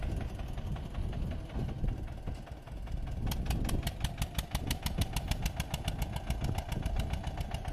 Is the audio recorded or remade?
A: recorded